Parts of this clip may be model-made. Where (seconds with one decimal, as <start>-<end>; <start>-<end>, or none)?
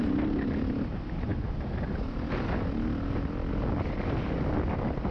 none